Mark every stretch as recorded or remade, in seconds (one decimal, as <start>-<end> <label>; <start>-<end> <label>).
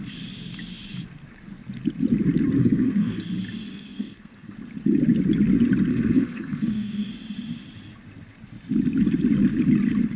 0.0-2.6 recorded; 2.6-3.2 remade; 3.2-3.7 recorded; 3.7-4.5 remade; 4.5-5.9 recorded; 5.9-7.1 remade; 7.1-10.2 recorded